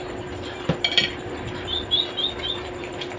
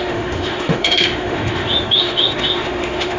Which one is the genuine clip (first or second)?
first